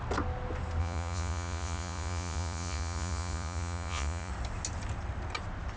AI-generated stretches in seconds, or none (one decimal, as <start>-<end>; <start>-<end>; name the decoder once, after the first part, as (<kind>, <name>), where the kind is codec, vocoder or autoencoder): 0.8-4.3 (vocoder, Vocos)